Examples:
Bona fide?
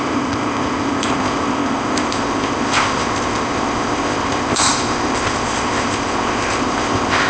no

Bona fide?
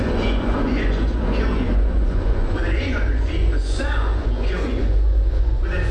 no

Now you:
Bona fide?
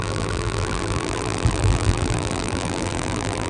no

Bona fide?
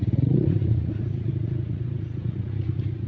no